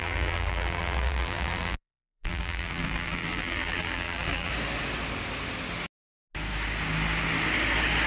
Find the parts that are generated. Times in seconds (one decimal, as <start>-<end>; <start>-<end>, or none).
0.0-4.5